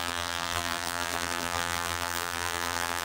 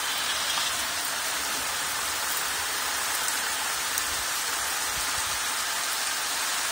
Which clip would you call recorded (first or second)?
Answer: second